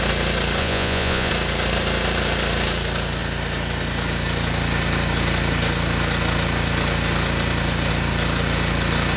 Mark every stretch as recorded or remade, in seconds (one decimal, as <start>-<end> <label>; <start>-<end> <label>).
0.0-0.6 recorded; 0.6-1.3 remade; 1.3-9.2 recorded

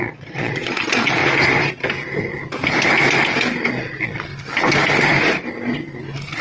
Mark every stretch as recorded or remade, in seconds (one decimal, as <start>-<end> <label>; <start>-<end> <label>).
0.0-1.2 remade; 1.2-3.7 recorded; 3.7-4.3 remade; 4.3-6.4 recorded